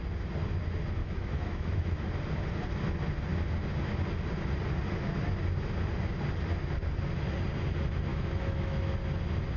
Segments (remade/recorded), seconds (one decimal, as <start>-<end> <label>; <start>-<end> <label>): 0.0-1.0 recorded; 1.0-2.1 remade; 2.1-8.1 recorded; 8.1-8.9 remade; 8.9-9.6 recorded